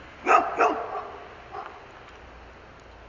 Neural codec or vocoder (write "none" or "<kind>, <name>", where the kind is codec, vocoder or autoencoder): none